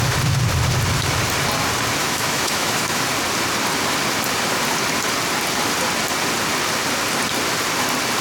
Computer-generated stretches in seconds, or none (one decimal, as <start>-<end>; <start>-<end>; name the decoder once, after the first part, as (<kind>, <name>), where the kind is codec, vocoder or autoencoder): 2.0-3.0 (autoencoder, DAC-VAE)